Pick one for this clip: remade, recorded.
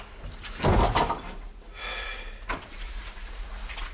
recorded